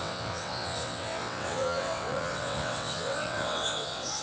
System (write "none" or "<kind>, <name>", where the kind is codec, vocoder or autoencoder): vocoder, WaveNeXt